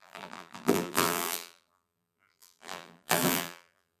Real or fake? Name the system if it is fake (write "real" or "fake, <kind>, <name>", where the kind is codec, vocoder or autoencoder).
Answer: fake, vocoder, BigVGAN v2